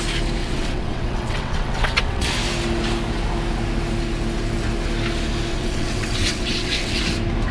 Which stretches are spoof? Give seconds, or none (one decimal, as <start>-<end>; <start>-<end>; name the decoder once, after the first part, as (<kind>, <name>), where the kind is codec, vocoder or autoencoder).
0.4-2.3 (vocoder, WaveNeXt); 5.5-7.0